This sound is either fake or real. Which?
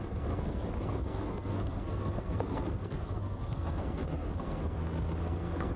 fake